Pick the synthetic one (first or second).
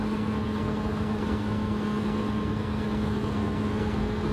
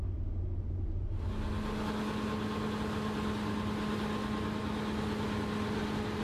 first